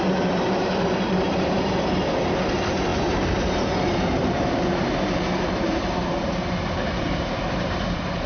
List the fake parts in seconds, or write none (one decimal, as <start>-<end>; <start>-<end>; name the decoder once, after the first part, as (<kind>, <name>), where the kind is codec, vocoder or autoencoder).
0.0-8.3 (vocoder, BigVGAN v2)